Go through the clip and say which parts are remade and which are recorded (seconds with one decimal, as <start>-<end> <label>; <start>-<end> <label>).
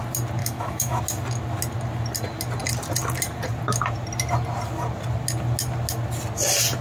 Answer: 0.0-0.4 recorded; 0.4-1.0 remade; 1.0-6.8 recorded